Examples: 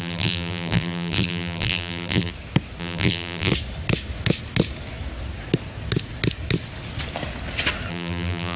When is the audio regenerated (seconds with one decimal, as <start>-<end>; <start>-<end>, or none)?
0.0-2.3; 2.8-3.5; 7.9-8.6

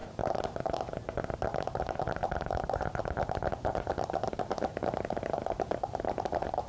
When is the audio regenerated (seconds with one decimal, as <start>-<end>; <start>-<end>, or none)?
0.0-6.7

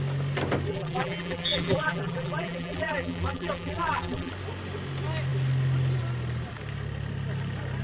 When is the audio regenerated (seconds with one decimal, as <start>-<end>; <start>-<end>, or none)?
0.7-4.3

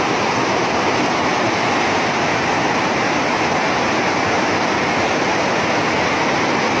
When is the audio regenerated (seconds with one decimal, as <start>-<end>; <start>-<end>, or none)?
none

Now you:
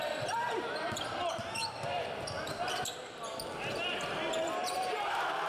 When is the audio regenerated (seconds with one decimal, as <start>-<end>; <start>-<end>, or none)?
0.0-5.5